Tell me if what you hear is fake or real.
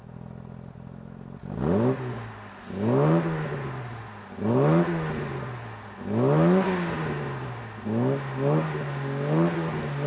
real